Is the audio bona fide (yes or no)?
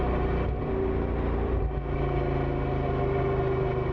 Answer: yes